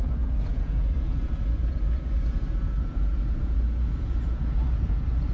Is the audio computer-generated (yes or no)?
yes